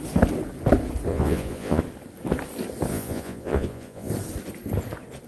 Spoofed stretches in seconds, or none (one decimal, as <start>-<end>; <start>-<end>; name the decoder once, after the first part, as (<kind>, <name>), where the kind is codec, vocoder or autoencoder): 1.1-1.8 (vocoder, Vocos); 2.9-4.1